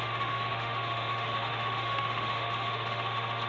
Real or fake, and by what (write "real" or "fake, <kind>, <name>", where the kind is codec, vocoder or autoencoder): fake, autoencoder, DAC-VAE